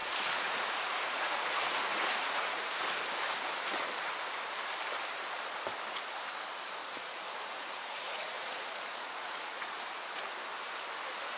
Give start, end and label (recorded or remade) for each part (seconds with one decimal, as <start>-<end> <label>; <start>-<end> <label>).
0.0-2.7 remade; 2.7-6.8 recorded; 6.8-10.2 remade; 10.2-11.4 recorded